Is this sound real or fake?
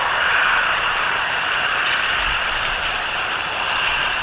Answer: fake